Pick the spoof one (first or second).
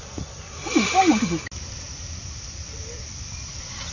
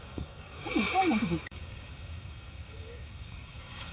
second